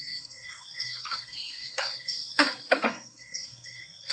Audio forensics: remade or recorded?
remade